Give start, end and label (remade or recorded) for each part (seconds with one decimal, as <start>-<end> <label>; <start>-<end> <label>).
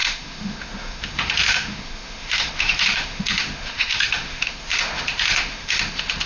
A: 0.0-6.3 remade